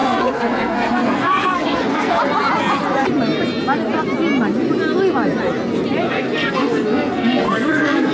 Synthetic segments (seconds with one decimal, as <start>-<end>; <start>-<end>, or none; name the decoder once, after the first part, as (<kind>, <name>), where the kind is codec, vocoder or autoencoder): 0.0-2.2 (codec, SNAC); 6.1-8.1